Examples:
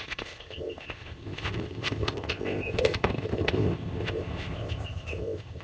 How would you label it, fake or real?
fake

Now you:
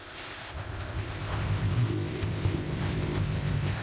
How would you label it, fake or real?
fake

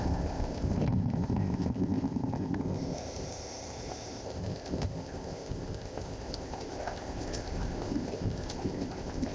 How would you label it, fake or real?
fake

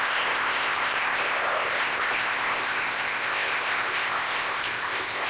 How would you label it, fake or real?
fake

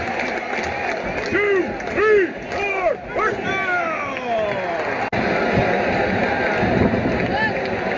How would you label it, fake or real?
real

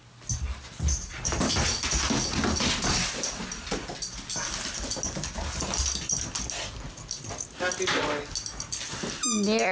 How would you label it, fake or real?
real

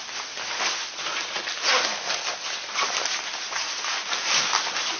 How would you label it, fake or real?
real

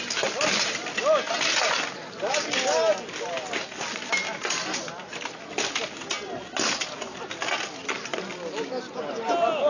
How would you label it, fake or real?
real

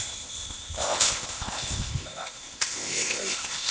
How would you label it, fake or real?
fake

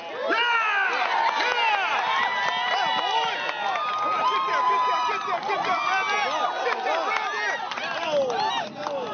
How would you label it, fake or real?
real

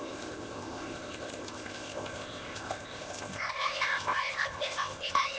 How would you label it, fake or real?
fake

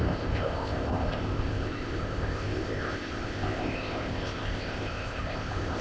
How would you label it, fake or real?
fake